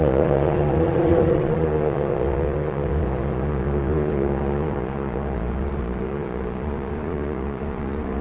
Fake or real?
fake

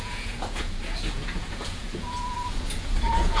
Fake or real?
fake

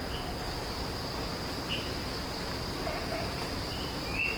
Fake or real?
real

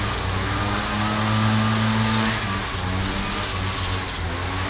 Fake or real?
real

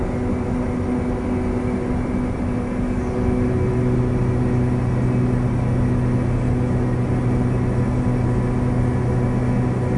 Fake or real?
real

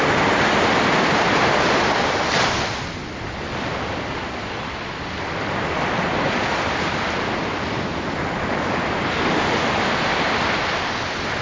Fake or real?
real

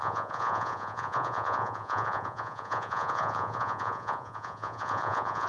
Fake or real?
fake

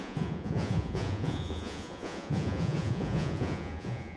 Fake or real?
fake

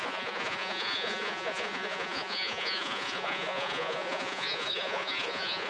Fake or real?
fake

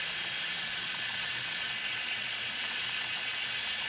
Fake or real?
fake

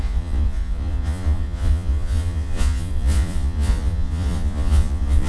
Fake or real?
fake